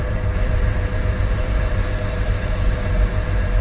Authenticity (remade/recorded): remade